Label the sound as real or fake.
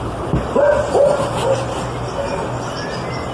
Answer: real